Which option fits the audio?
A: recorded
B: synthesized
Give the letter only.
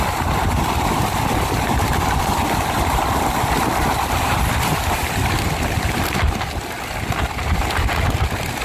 A